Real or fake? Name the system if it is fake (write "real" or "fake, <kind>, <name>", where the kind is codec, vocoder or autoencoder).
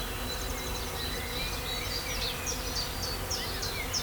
real